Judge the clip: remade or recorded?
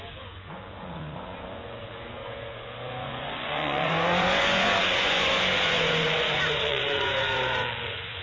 remade